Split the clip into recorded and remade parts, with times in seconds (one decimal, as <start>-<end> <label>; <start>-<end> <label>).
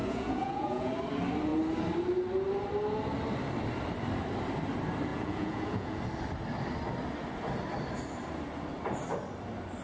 0.0-0.9 remade; 0.9-5.1 recorded; 5.1-6.0 remade; 6.0-9.8 recorded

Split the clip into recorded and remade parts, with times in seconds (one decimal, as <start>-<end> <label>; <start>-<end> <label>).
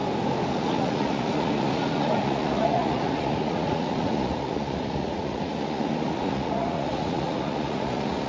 0.0-0.5 recorded; 0.5-8.3 remade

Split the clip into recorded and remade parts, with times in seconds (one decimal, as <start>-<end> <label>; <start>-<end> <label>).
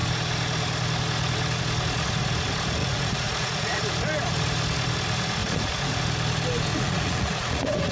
0.0-2.8 recorded; 2.8-3.8 remade; 3.8-5.4 recorded; 5.4-6.0 remade; 6.0-6.7 recorded; 6.7-7.9 remade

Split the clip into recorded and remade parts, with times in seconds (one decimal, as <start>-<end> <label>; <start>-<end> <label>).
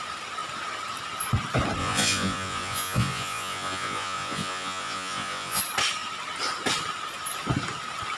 0.0-1.8 recorded; 1.8-5.6 remade; 5.6-8.2 recorded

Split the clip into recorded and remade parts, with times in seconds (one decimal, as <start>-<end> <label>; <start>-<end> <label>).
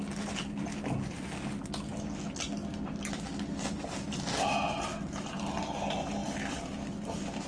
0.0-7.5 recorded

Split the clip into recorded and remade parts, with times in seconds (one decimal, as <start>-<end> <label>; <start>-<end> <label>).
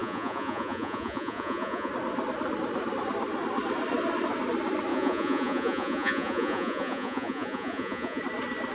0.0-1.9 remade; 1.9-4.9 recorded; 4.9-8.2 remade; 8.2-8.7 recorded